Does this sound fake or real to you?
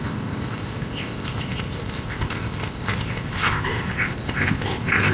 fake